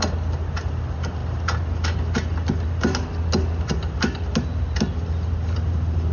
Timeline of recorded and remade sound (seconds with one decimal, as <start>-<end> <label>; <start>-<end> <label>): 0.0-6.1 recorded